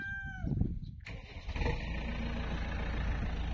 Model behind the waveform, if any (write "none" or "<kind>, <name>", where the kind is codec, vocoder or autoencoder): none